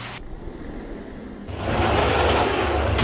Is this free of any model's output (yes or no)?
yes